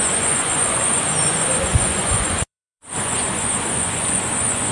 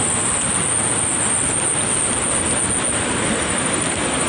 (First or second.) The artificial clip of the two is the first